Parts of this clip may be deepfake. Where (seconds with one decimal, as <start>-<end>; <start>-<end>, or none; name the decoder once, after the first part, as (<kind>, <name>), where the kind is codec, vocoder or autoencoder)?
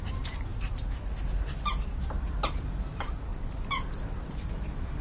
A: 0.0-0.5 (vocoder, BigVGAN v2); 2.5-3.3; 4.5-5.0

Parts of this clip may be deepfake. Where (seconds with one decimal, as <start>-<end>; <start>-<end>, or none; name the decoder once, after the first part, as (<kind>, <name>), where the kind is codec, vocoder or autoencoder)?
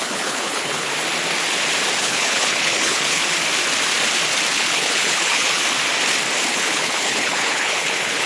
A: 0.0-0.9 (codec, HILCodec); 2.0-3.2; 4.5-5.6; 6.5-8.3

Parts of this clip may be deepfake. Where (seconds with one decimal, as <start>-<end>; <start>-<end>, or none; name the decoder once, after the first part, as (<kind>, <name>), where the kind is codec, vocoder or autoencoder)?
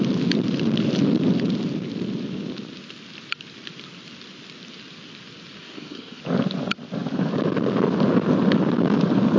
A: 5.6-6.2 (codec, DAC)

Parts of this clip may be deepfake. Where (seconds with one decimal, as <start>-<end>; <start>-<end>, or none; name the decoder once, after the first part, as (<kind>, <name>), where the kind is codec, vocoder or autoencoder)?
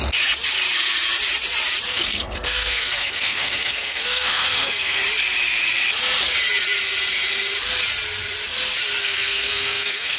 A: 1.9-5.0 (codec, SNAC); 9.0-10.2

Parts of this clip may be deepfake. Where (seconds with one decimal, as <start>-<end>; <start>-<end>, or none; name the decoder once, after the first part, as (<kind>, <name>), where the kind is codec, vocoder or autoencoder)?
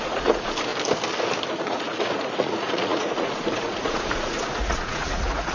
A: 0.0-0.7 (vocoder, Vocos); 1.5-5.5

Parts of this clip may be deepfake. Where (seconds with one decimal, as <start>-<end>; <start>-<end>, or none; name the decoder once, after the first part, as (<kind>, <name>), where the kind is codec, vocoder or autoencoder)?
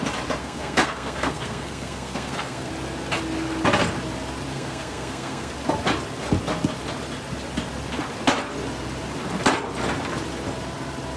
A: 0.4-2.7 (codec, SNAC); 4.5-5.5